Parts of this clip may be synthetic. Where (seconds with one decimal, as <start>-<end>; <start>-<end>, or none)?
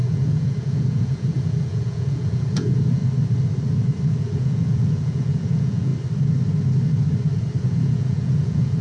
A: 0.0-3.0; 4.2-5.9; 7.6-8.8